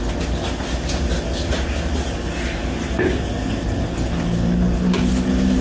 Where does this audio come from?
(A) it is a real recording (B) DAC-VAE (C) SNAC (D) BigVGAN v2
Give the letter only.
A